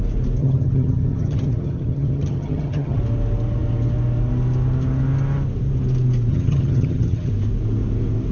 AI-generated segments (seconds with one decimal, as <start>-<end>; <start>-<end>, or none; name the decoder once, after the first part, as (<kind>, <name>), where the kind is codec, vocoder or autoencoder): 0.4-3.0 (vocoder, HiFi-GAN); 6.3-7.3